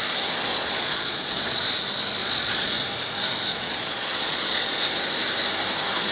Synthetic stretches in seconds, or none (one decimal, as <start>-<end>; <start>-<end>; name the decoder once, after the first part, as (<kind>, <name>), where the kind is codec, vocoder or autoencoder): 0.5-1.6 (vocoder, Vocos); 2.2-2.8; 3.5-4.8

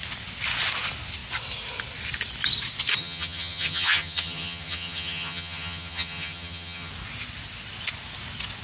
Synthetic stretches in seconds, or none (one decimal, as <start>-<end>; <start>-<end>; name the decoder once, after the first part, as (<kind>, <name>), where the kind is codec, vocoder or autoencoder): 3.0-6.9 (vocoder, HiFi-GAN)

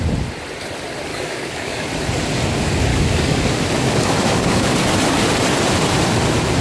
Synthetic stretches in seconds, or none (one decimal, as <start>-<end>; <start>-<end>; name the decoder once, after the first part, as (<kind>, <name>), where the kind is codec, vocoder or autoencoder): 1.1-1.9 (codec, DAC); 2.9-4.7

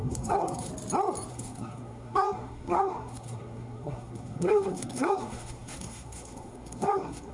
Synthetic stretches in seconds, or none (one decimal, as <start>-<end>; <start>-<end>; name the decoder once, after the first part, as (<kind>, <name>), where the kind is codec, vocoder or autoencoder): 0.0-0.7 (codec, SNAC); 1.3-7.3

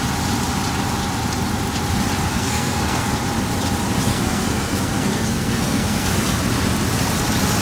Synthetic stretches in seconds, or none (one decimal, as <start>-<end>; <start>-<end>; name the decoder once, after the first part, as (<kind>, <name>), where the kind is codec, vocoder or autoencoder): 2.3-3.2 (codec, SNAC); 4.1-6.4